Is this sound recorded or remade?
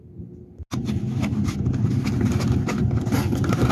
recorded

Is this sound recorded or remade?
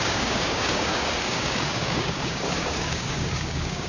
remade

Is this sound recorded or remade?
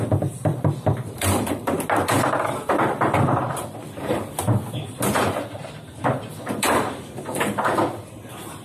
remade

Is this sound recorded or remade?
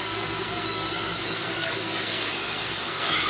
remade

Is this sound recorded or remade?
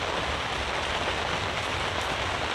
recorded